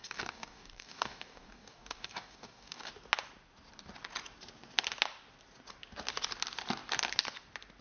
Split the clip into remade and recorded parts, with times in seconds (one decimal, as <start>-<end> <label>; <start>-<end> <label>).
0.0-2.9 remade; 2.9-7.8 recorded

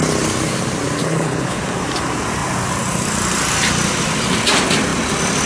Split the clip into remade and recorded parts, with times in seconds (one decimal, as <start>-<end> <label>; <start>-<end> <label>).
0.0-1.0 recorded; 1.0-1.6 remade; 1.6-5.5 recorded

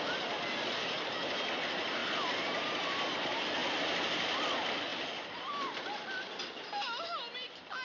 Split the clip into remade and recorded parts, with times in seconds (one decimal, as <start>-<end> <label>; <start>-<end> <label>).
0.0-3.6 recorded; 3.6-4.3 remade; 4.3-7.8 recorded

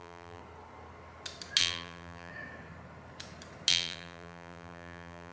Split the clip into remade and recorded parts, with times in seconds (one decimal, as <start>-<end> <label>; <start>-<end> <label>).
0.0-0.4 remade; 0.4-1.6 recorded; 1.6-2.3 remade; 2.3-3.7 recorded; 3.7-5.3 remade